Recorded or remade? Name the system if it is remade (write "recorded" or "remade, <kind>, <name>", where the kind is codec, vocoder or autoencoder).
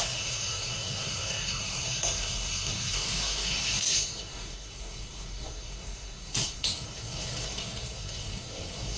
remade, codec, SNAC